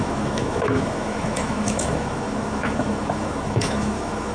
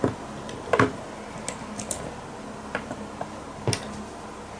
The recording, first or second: second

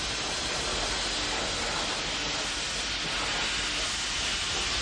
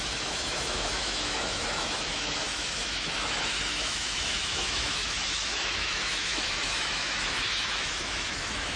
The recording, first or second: first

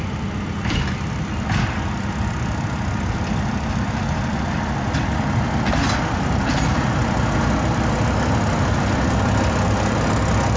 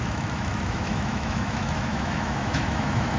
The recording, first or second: first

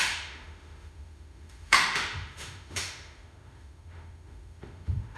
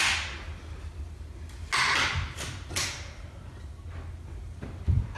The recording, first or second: second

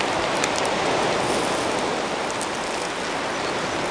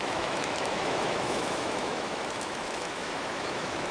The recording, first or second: first